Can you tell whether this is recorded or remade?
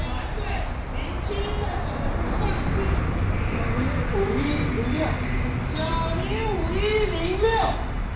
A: recorded